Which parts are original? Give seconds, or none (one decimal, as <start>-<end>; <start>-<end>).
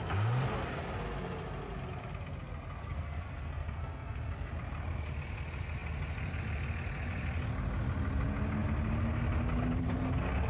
0.0-2.8; 4.5-10.5